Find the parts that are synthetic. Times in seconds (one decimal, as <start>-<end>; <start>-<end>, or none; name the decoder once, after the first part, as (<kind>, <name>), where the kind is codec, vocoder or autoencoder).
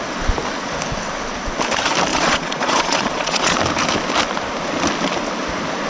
2.1-3.6 (vocoder, Vocos)